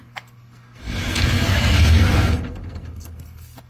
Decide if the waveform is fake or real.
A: fake